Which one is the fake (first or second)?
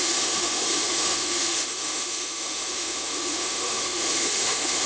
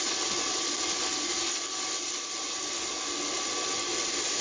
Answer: first